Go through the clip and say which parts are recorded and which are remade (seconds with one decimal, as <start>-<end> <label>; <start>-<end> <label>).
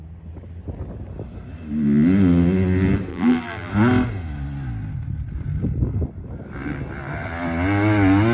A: 0.0-3.1 recorded; 3.1-3.7 remade; 3.7-8.3 recorded